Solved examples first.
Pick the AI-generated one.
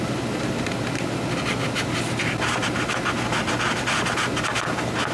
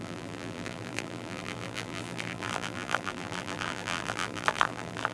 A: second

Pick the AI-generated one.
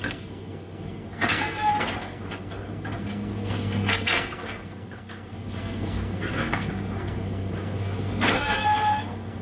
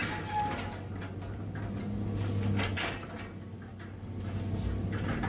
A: first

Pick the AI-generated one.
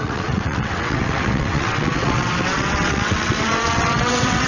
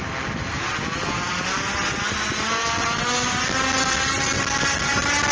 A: first